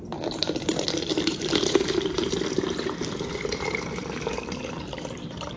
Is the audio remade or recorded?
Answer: remade